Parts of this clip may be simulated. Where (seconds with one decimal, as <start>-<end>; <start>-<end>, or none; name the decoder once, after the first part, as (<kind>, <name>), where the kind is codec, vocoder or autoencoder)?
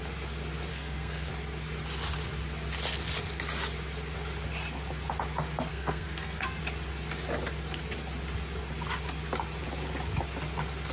0.7-1.3 (codec, SNAC); 5.7-6.6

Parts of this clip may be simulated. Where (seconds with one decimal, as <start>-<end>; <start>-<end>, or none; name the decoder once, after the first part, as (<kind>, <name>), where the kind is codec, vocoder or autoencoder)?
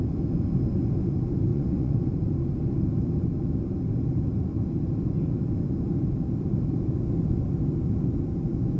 1.5-2.1 (vocoder, Vocos)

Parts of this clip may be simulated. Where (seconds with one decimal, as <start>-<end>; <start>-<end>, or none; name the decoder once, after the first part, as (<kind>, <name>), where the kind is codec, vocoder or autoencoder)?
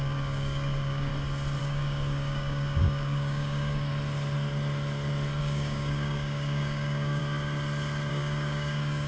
0.0-1.1 (codec, DAC); 1.6-3.9; 5.4-7.2; 8.1-9.1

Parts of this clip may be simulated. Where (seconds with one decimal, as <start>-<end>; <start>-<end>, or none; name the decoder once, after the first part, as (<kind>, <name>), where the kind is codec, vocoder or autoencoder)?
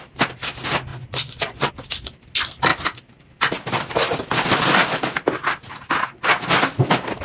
0.9-1.7 (vocoder, Vocos)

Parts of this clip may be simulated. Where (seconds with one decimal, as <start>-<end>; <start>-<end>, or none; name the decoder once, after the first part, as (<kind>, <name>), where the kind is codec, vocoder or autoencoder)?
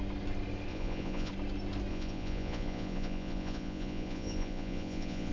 0.7-1.3 (vocoder, Vocos); 1.9-5.3